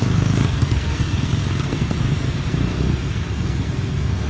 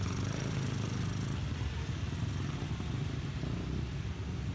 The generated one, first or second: first